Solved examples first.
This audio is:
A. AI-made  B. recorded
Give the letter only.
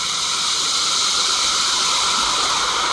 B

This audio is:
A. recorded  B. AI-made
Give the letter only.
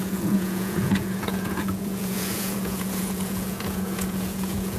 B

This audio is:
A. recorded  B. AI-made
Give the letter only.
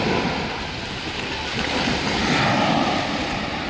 A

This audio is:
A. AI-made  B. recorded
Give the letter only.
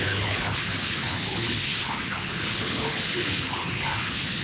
A